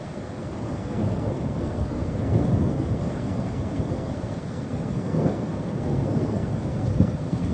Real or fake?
fake